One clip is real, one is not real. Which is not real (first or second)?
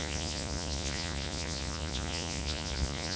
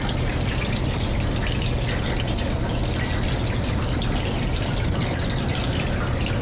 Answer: first